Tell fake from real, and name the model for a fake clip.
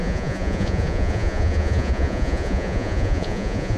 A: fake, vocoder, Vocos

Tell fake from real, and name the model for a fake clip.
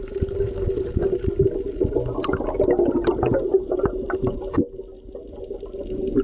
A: real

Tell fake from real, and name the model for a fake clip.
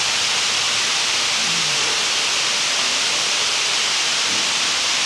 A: real